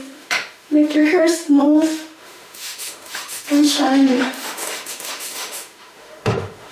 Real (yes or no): no